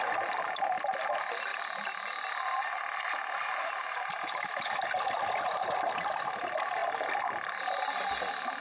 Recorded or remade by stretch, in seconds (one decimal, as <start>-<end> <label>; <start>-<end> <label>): 0.0-4.2 recorded; 4.2-4.8 remade; 4.8-8.6 recorded